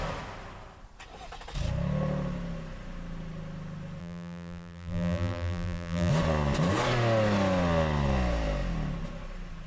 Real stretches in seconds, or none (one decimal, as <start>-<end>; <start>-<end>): 0.0-4.0; 6.1-9.7